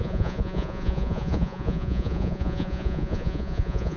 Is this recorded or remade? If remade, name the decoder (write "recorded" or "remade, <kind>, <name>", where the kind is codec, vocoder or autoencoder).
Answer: remade, vocoder, Vocos